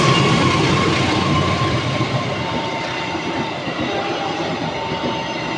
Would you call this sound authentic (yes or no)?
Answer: no